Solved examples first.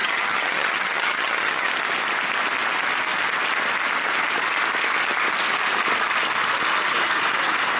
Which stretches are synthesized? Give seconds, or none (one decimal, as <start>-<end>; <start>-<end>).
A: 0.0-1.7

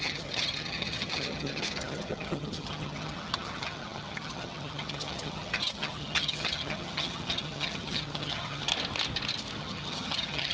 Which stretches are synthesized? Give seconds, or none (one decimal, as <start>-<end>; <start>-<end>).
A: 0.0-8.7; 9.6-10.5

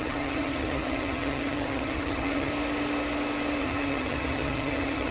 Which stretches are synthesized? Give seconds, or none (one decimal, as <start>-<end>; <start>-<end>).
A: 0.0-2.5; 3.6-5.1

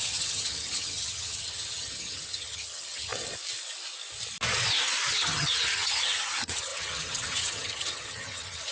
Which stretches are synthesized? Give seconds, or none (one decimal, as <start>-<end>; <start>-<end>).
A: 0.0-3.1; 5.1-8.7

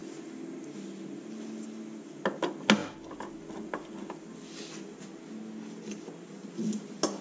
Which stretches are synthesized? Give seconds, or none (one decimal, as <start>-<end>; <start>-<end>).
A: none

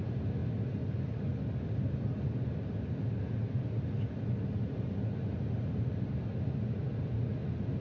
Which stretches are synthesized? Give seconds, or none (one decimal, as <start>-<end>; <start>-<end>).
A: none

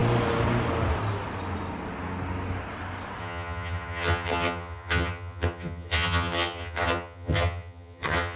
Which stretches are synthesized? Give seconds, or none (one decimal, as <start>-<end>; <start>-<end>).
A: 3.2-8.4

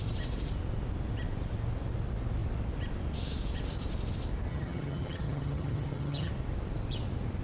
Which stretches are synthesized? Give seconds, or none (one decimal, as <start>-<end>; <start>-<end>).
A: 4.5-6.3